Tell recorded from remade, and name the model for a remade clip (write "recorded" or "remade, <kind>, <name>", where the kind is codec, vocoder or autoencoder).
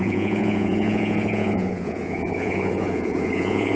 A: remade, vocoder, Vocos